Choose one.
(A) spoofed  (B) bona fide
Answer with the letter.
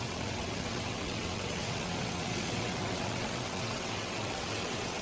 A